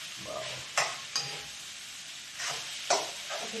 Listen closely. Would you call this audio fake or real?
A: real